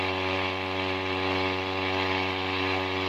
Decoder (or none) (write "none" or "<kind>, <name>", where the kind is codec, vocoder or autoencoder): none